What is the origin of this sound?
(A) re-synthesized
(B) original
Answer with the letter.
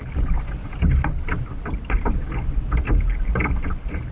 B